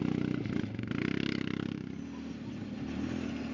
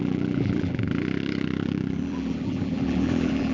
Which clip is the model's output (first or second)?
second